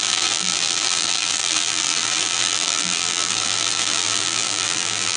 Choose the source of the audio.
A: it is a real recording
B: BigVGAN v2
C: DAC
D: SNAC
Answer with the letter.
B